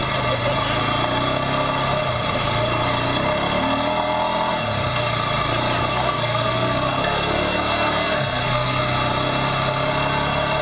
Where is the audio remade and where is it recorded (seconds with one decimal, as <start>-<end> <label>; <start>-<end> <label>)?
0.0-5.9 recorded; 5.9-8.8 remade; 8.8-10.6 recorded